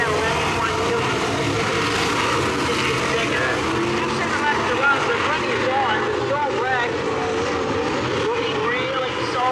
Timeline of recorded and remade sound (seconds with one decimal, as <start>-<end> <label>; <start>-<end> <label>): 0.0-1.7 remade; 1.7-6.5 recorded; 6.5-9.5 remade